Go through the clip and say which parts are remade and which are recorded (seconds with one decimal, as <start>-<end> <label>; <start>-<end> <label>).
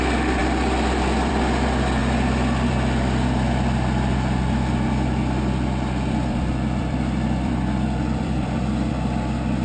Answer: 0.0-2.0 recorded; 2.0-2.7 remade; 2.7-6.8 recorded; 6.8-8.9 remade; 8.9-9.6 recorded